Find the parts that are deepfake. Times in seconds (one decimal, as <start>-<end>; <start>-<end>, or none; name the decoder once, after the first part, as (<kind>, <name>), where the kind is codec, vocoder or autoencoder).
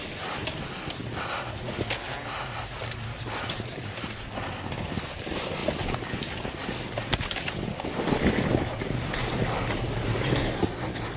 none